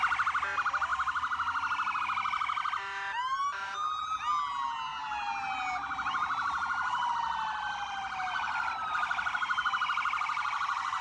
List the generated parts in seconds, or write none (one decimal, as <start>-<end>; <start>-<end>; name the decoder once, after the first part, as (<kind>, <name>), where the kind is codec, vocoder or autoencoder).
4.9-7.1 (vocoder, BigVGAN v2)